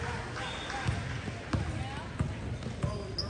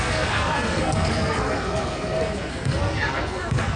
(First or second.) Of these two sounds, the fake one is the second